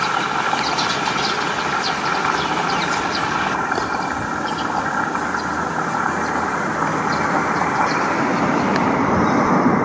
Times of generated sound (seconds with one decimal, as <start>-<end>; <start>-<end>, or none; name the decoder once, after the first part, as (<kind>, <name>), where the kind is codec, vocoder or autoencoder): none